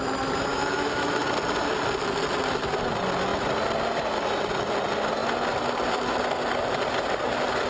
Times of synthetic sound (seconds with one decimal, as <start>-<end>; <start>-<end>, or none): 0.5-1.2